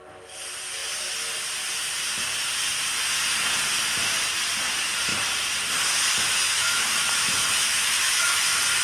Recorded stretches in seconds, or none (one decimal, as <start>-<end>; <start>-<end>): 0.0-6.4; 8.4-8.8

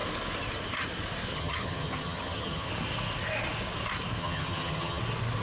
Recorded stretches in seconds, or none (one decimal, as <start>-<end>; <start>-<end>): 0.0-1.3; 2.7-4.2; 5.0-5.4

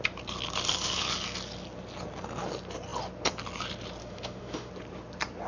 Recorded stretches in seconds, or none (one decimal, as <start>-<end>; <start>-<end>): 0.0-4.0; 4.7-5.5

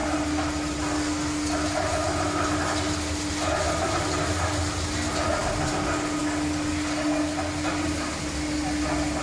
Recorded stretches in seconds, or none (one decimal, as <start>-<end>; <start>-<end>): 0.0-9.2

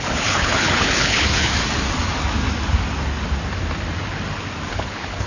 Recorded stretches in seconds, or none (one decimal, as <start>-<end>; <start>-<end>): 1.5-4.7

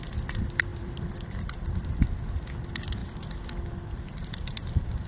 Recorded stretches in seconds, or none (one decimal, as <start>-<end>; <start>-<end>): 0.0-0.7; 1.9-3.0

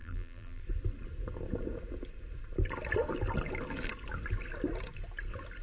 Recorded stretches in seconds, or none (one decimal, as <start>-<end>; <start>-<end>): 0.6-5.6